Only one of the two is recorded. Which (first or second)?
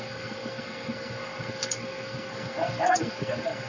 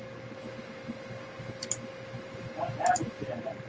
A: second